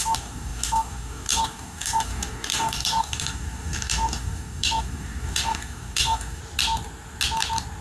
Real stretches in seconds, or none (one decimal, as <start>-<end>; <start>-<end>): 6.4-7.8